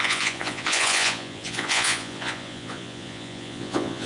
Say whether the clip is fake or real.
fake